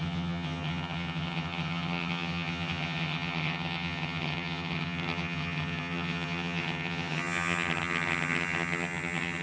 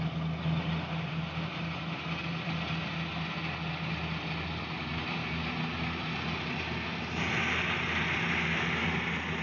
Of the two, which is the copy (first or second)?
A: first